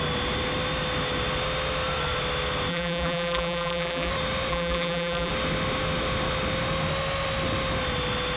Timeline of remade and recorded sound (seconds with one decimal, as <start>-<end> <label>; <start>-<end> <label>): 0.0-2.7 recorded; 2.7-4.1 remade; 4.1-4.5 recorded; 4.5-5.3 remade; 5.3-8.4 recorded